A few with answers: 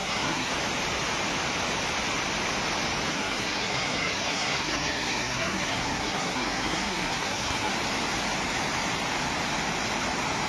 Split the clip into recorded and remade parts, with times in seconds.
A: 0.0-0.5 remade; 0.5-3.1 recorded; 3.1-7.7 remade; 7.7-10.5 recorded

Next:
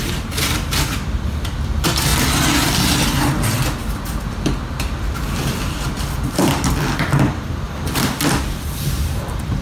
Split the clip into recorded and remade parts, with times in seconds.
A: 0.0-2.1 remade; 2.1-3.2 recorded; 3.2-9.6 remade

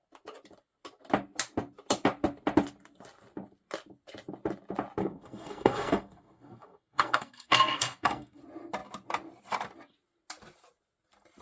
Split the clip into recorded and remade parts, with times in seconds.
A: 0.0-5.0 recorded; 5.0-8.4 remade; 8.4-11.4 recorded

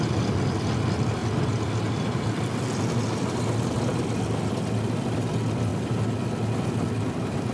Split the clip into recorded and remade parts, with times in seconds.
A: 0.0-7.5 recorded

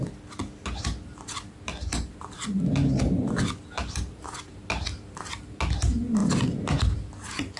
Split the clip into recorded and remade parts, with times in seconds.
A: 0.0-7.6 recorded

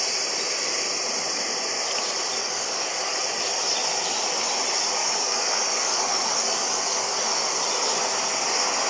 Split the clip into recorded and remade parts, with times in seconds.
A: 0.0-2.4 recorded; 2.4-3.2 remade; 3.2-5.0 recorded; 5.0-7.5 remade; 7.5-8.9 recorded